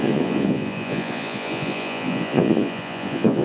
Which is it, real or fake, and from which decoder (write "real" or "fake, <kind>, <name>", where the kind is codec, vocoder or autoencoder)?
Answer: fake, vocoder, Vocos